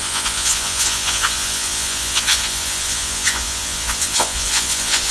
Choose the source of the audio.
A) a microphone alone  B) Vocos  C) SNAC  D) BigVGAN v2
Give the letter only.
B